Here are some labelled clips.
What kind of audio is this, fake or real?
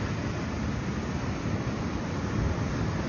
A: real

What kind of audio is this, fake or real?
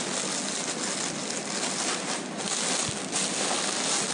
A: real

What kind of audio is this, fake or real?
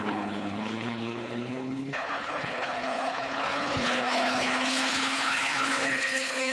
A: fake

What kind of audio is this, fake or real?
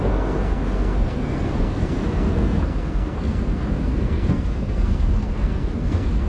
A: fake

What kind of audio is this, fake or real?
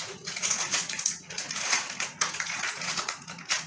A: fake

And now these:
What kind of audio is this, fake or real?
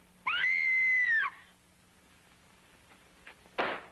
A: real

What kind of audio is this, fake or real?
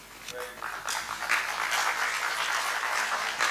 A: real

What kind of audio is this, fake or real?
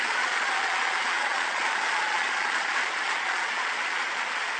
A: fake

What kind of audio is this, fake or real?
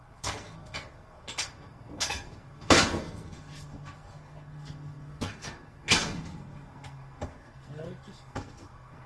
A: fake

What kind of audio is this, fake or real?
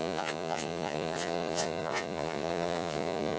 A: fake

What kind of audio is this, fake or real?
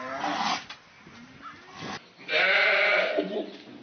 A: real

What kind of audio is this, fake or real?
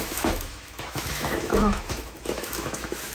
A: fake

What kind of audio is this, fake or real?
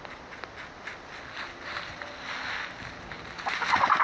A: real